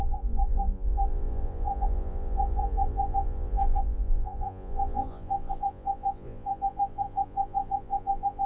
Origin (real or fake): fake